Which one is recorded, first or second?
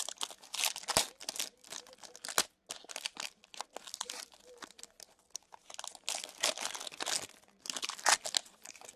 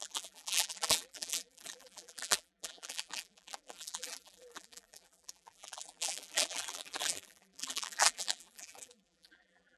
first